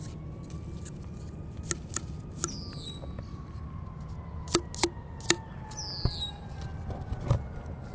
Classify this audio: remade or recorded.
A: recorded